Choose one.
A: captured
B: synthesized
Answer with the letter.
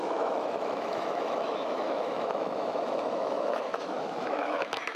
B